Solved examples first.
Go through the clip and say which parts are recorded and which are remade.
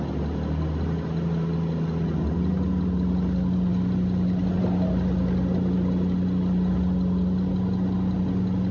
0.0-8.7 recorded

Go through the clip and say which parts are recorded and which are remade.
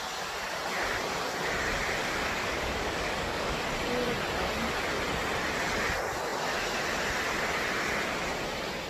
0.0-2.0 recorded; 2.0-3.6 remade; 3.6-8.9 recorded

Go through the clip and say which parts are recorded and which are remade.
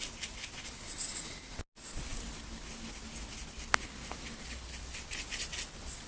0.0-6.1 recorded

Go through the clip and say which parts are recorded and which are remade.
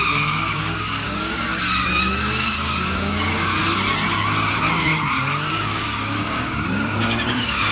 0.0-1.5 remade; 1.5-2.2 recorded; 2.2-3.6 remade; 3.6-4.5 recorded; 4.5-4.9 remade; 4.9-5.5 recorded; 5.5-7.7 remade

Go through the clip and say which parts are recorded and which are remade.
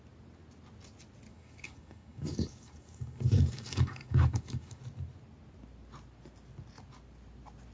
0.0-1.3 recorded; 1.3-4.8 remade; 4.8-7.7 recorded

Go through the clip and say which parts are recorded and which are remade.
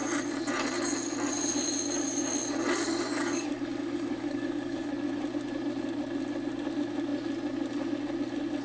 0.0-3.1 recorded; 3.1-4.9 remade; 4.9-8.6 recorded